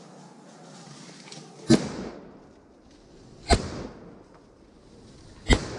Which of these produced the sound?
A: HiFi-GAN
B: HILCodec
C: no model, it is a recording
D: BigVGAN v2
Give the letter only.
C